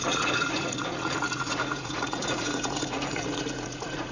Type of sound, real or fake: fake